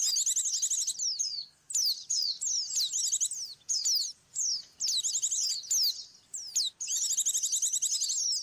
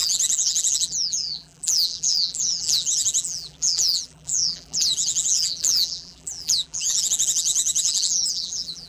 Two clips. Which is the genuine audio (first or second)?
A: first